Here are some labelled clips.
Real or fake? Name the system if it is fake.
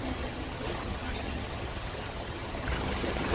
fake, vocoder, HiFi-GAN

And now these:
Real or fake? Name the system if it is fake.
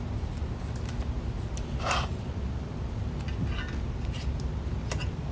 real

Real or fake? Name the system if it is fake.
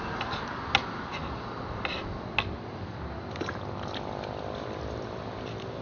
real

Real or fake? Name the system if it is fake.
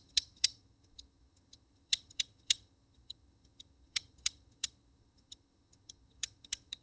fake, vocoder, HiFi-GAN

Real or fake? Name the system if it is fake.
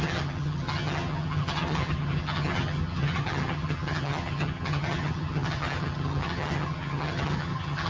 fake, vocoder, HiFi-GAN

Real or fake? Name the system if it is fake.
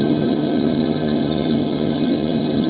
fake, vocoder, HiFi-GAN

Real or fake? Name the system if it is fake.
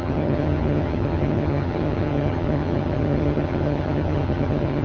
fake, vocoder, HiFi-GAN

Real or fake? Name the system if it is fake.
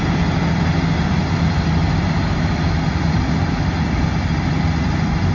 real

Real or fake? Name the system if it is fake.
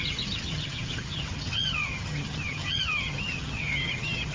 fake, vocoder, HiFi-GAN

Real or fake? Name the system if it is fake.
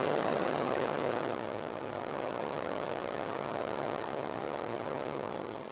fake, vocoder, HiFi-GAN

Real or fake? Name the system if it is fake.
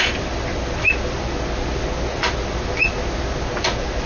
real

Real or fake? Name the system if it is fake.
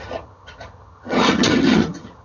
fake, vocoder, HiFi-GAN